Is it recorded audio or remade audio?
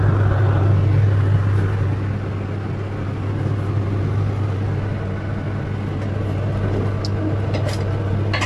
recorded